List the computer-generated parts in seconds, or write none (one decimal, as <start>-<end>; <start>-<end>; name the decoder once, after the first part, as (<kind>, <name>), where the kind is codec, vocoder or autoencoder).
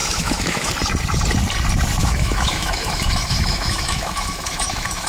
0.0-0.7 (autoencoder, DAC-VAE); 2.0-5.1